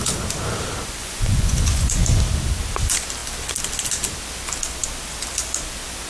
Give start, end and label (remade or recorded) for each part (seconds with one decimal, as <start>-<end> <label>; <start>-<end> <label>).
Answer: 0.0-1.0 recorded; 1.0-2.2 remade; 2.2-6.1 recorded